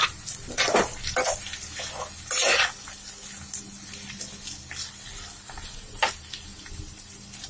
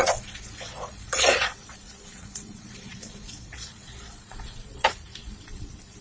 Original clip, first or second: first